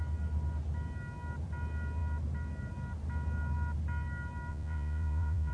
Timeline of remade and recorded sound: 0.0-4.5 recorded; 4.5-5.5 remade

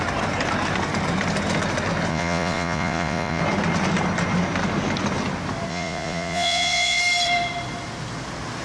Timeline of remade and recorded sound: 0.0-2.1 recorded; 2.1-3.4 remade; 3.4-5.7 recorded; 5.7-7.0 remade; 7.0-8.6 recorded

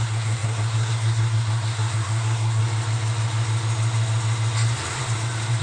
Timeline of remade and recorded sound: 0.0-2.6 remade; 2.6-5.6 recorded

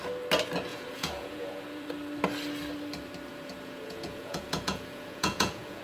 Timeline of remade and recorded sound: 0.0-0.7 recorded; 0.7-1.9 remade; 1.9-3.3 recorded; 3.3-5.8 remade

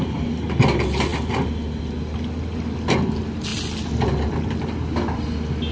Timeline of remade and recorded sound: 0.0-5.7 recorded